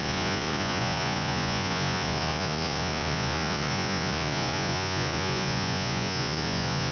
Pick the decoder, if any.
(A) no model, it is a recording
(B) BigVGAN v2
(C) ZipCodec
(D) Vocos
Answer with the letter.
D